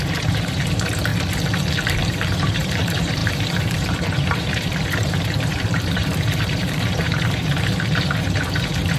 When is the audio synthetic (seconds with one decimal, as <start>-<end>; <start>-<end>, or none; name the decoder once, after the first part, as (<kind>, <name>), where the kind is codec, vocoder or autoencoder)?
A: 0.0-1.1 (vocoder, BigVGAN v2); 2.1-9.0